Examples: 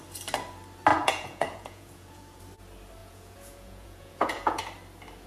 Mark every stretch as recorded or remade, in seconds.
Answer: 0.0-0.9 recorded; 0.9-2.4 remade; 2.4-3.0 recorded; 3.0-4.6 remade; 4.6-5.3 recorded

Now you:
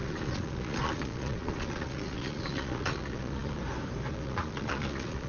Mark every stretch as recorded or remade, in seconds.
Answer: 0.0-3.6 remade; 3.6-4.1 recorded; 4.1-5.3 remade

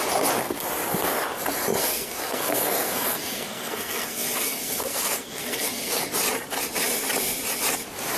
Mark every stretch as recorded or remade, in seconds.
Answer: 0.0-1.8 recorded; 1.8-6.0 remade; 6.0-8.2 recorded

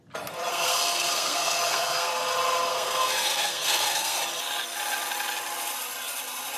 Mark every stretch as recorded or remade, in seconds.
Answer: 0.0-0.5 recorded; 0.5-2.1 remade; 2.1-2.7 recorded; 2.7-4.2 remade; 4.2-6.6 recorded

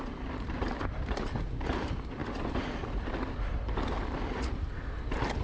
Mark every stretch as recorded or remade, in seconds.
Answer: 0.0-5.4 recorded